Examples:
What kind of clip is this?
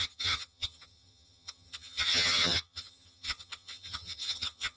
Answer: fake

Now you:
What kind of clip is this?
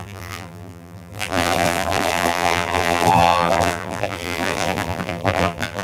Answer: fake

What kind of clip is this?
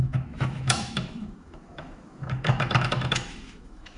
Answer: fake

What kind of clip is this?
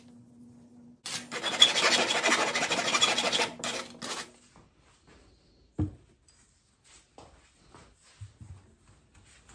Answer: real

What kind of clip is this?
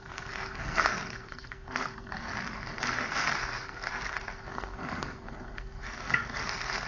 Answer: fake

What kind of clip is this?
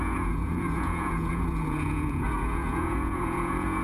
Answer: fake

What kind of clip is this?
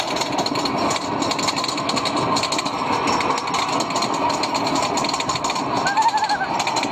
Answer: real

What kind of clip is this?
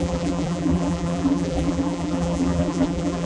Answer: fake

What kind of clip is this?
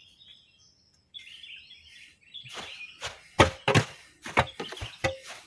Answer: real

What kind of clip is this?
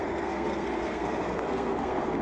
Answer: fake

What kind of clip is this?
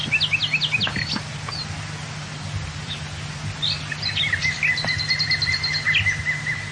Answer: real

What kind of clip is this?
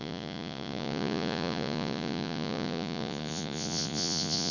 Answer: fake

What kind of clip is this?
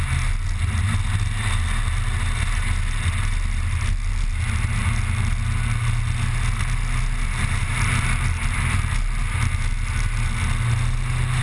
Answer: real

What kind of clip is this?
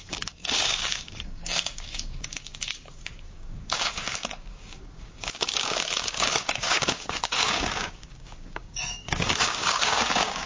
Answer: fake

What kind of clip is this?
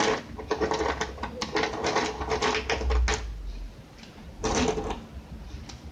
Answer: real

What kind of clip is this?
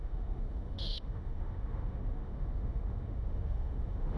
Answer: fake